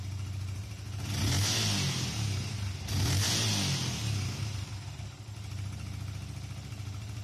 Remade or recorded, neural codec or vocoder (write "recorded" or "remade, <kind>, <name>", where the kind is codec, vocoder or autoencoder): recorded